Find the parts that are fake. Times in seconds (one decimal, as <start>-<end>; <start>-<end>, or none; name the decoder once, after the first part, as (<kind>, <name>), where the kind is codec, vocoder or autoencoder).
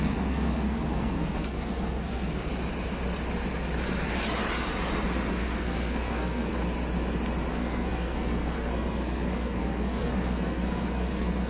0.0-2.5 (codec, SNAC); 5.3-6.5; 7.5-11.5